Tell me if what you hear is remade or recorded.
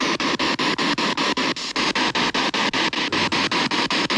recorded